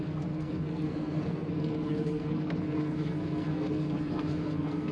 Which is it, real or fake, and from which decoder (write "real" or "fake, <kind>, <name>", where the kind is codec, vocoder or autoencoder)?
fake, codec, SNAC